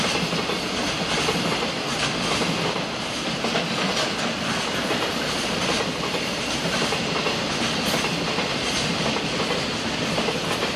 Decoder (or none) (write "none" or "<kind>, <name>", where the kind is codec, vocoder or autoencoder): none